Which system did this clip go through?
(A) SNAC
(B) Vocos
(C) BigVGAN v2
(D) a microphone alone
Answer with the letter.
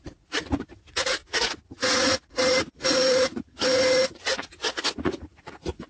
B